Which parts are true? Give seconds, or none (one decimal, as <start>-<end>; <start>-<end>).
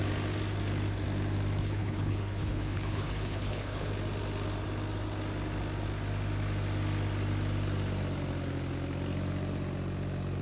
0.0-1.6; 3.9-10.4